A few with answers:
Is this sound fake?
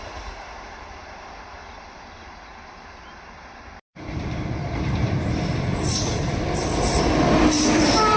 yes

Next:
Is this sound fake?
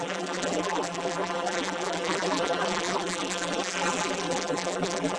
yes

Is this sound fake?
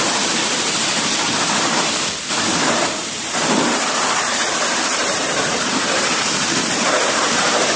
yes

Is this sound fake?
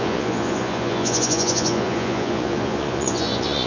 yes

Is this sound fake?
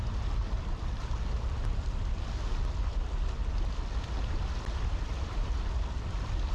no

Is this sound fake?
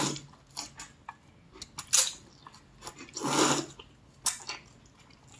no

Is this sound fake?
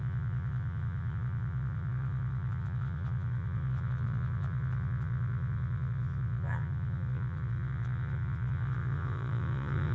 yes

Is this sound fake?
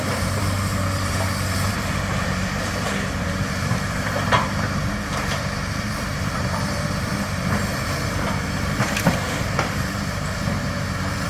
yes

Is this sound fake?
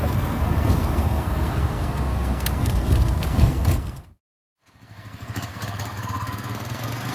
yes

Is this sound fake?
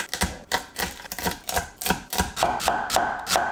no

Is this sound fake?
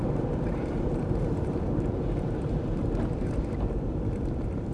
yes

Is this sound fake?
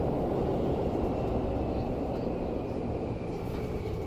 no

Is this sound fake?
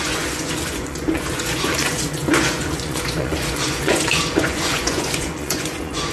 yes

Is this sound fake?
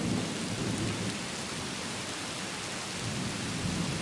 no